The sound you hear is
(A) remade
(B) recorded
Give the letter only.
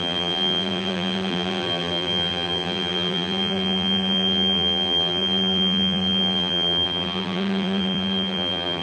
A